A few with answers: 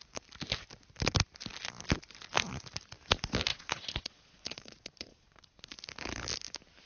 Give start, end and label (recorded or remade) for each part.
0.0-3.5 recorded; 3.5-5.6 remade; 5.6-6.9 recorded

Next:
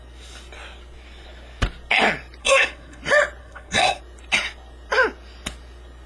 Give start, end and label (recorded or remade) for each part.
0.0-2.4 recorded; 2.4-3.0 remade; 3.0-3.4 recorded; 3.4-4.0 remade; 4.0-6.1 recorded

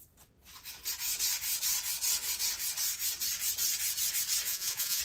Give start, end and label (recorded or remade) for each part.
0.0-4.5 recorded; 4.5-5.0 remade

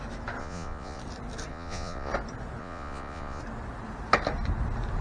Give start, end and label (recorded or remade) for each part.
0.0-0.4 recorded; 0.4-1.0 remade; 1.0-1.5 recorded; 1.5-2.1 remade; 2.1-2.6 recorded; 2.6-3.4 remade; 3.4-5.0 recorded